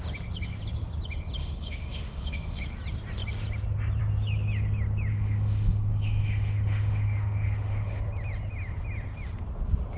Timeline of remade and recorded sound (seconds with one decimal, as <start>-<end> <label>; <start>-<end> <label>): 0.0-1.4 recorded; 1.4-2.6 remade; 2.6-5.1 recorded; 5.1-8.0 remade; 8.0-10.0 recorded